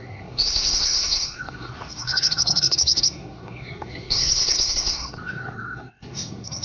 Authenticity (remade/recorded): remade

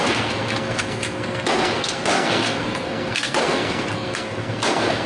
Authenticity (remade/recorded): remade